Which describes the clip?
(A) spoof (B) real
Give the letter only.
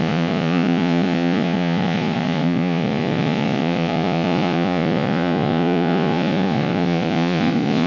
A